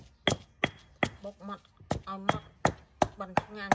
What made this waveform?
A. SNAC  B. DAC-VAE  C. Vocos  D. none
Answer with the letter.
D